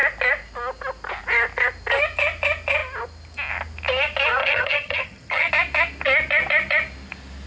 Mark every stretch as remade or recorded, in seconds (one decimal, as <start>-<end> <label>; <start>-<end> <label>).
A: 0.0-4.4 recorded; 4.4-5.5 remade; 5.5-7.5 recorded